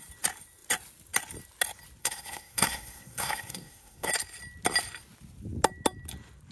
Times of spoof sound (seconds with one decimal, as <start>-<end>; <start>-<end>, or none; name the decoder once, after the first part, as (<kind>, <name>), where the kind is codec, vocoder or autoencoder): 2.0-4.1 (codec, SNAC)

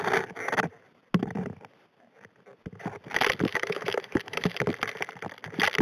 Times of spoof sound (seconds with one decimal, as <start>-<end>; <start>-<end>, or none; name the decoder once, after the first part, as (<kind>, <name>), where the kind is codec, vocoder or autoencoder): 3.5-4.7 (autoencoder, DAC-VAE)

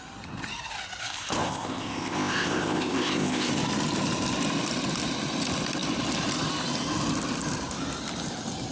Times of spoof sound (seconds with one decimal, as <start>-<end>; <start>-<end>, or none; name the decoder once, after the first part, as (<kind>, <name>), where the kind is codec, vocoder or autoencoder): 1.0-3.5 (codec, ZipCodec)

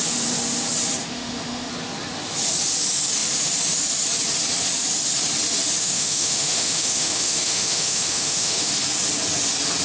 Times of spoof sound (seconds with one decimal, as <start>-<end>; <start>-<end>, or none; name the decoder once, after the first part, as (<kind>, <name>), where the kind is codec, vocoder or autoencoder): 1.0-1.7 (autoencoder, DAC-VAE); 5.8-8.7

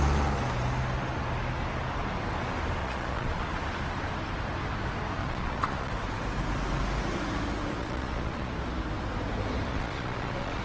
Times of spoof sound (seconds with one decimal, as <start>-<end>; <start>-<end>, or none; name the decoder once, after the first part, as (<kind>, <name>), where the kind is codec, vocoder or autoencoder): 2.8-3.5 (vocoder, Vocos); 5.2-5.9; 7.8-8.5; 9.7-10.6

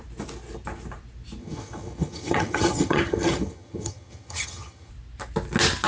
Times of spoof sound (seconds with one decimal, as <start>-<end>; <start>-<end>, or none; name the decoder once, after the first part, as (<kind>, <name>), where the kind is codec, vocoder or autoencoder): 1.4-4.9 (vocoder, HiFi-GAN)